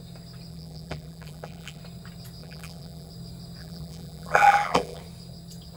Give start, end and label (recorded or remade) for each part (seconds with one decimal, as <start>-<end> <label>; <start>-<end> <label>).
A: 0.0-0.5 recorded; 0.5-1.8 remade; 1.8-2.4 recorded; 2.4-3.1 remade; 3.1-3.6 recorded; 3.6-5.0 remade; 5.0-5.8 recorded